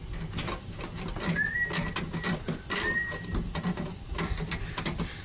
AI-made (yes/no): no